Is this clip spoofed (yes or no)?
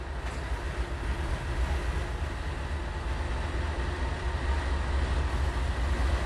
no